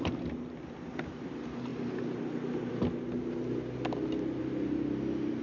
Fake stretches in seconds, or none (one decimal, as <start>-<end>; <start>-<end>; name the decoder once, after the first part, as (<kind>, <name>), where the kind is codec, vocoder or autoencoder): none